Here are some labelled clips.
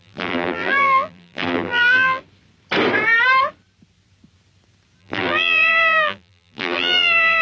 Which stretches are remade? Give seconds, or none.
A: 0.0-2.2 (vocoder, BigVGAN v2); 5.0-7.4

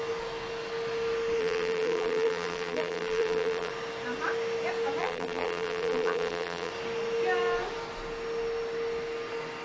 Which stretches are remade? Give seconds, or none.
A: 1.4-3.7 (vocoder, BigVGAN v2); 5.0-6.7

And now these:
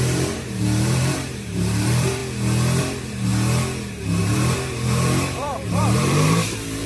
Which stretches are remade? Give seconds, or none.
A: 0.0-2.2 (vocoder, BigVGAN v2); 2.8-3.3; 4.2-6.9

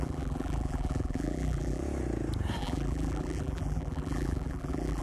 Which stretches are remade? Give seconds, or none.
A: 0.0-1.8 (vocoder, BigVGAN v2); 2.6-5.0

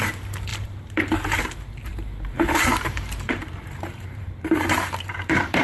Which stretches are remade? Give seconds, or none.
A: 0.5-1.4 (vocoder, BigVGAN v2); 1.9-5.6

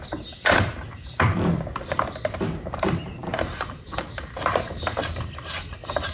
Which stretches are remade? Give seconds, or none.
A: 0.0-5.0 (vocoder, BigVGAN v2); 5.6-6.1